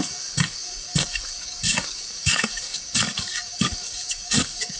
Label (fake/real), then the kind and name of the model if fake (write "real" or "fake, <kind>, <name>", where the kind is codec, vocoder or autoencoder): fake, codec, DAC